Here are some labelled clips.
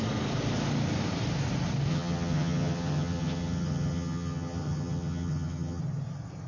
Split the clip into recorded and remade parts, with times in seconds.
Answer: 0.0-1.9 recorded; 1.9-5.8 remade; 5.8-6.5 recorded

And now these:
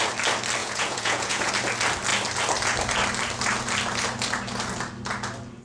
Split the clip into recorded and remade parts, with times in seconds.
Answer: 0.0-0.6 recorded; 0.6-1.5 remade; 1.5-5.6 recorded

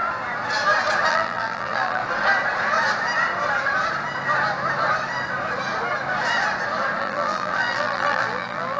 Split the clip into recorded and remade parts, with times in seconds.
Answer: 0.0-1.1 recorded; 1.1-2.0 remade; 2.0-7.0 recorded; 7.0-8.8 remade

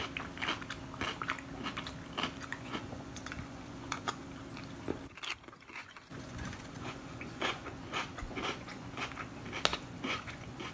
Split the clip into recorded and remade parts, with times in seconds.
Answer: 0.0-2.5 recorded; 2.5-4.2 remade; 4.2-5.8 recorded; 5.8-9.1 remade; 9.1-9.7 recorded; 9.7-10.7 remade

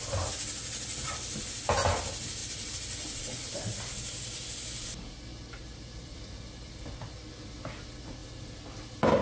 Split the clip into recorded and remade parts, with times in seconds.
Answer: 0.0-2.4 recorded; 2.4-3.5 remade; 3.5-5.3 recorded; 5.3-7.3 remade; 7.3-9.2 recorded

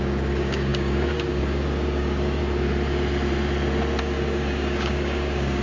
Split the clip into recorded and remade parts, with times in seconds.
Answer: 0.0-2.4 remade; 2.4-4.0 recorded; 4.0-5.6 remade